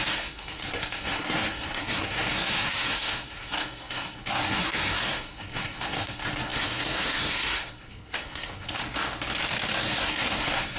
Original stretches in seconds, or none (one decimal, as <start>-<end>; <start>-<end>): 8.8-9.7